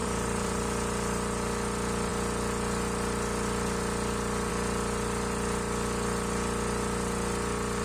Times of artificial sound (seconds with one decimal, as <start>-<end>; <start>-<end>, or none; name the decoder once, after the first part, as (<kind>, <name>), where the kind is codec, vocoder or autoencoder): 0.0-0.6 (vocoder, BigVGAN v2)